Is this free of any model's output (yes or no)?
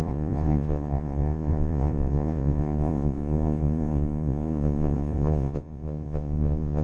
no